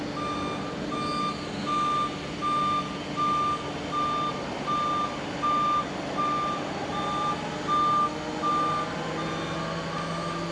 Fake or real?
real